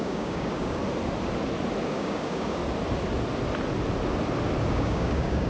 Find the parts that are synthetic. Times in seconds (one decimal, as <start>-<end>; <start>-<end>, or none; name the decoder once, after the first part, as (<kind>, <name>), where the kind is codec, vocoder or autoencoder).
0.0-0.8 (codec, DAC); 1.9-2.6; 4.7-5.5